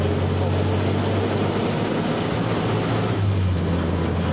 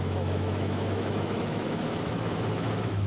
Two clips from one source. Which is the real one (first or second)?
first